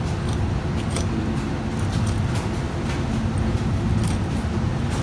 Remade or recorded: recorded